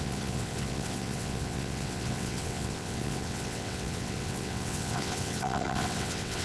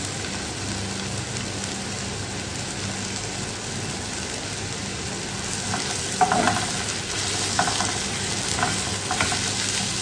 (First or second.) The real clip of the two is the second